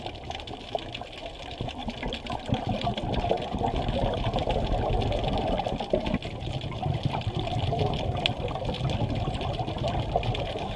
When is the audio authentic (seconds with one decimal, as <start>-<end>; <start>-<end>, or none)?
0.0-10.8